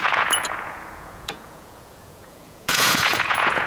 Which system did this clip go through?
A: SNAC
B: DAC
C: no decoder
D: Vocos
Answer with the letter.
D